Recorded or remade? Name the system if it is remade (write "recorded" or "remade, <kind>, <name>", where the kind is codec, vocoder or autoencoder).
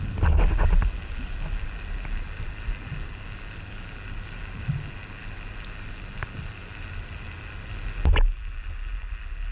recorded